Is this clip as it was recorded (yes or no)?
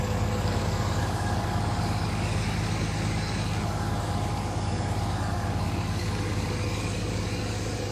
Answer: no